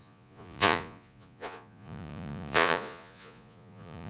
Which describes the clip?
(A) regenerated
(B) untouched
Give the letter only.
A